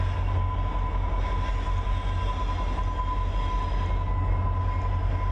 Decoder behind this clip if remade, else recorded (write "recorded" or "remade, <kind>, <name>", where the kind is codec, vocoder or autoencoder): recorded